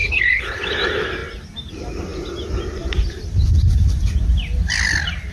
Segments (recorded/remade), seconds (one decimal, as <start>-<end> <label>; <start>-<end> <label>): 0.0-0.7 remade; 0.7-5.3 recorded